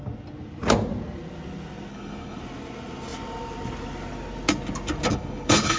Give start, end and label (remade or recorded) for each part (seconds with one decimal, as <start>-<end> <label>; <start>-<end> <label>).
0.0-1.9 recorded; 1.9-2.4 remade; 2.4-5.1 recorded; 5.1-5.8 remade

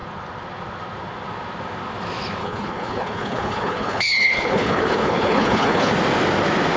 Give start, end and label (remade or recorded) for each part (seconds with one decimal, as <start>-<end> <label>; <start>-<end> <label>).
0.0-2.4 recorded; 2.4-5.9 remade; 5.9-6.8 recorded

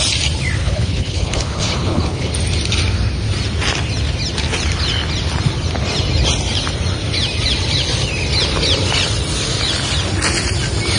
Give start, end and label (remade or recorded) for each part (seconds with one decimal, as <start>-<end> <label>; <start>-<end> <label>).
0.0-0.6 recorded; 0.6-2.3 remade; 2.3-11.0 recorded

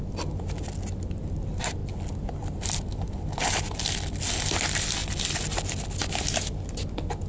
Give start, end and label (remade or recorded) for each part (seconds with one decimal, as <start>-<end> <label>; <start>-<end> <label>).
0.0-7.3 recorded